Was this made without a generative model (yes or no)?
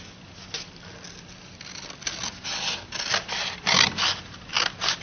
yes